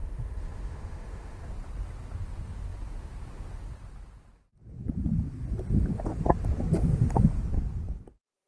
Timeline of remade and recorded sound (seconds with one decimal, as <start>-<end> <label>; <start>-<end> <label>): 0.0-1.5 remade; 1.5-8.5 recorded